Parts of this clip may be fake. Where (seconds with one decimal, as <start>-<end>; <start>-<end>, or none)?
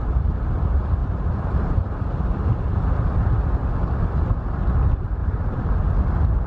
1.0-2.6; 5.2-5.7